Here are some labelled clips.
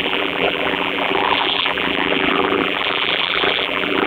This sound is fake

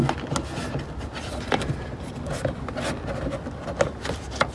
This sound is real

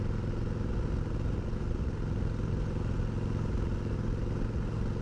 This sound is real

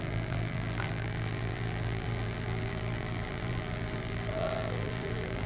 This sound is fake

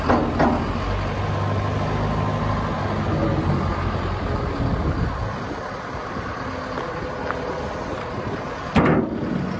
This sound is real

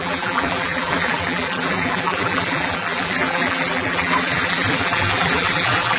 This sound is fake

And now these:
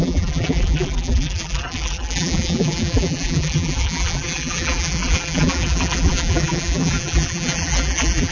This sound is fake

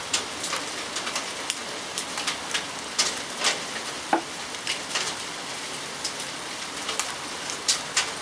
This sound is real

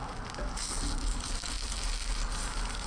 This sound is real